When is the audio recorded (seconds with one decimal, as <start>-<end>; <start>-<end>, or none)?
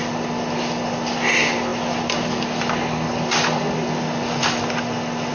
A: 0.0-5.3